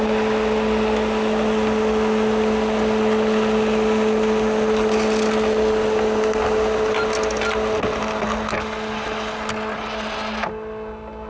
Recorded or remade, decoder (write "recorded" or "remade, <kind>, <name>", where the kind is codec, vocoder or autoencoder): recorded